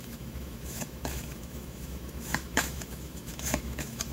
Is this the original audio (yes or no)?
no